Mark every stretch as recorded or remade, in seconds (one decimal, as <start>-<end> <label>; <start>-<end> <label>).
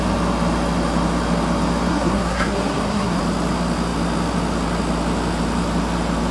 0.0-1.9 recorded; 1.9-3.2 remade; 3.2-6.3 recorded